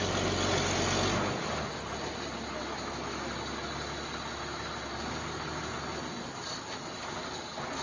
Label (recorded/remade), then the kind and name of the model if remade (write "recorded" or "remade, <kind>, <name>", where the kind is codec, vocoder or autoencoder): recorded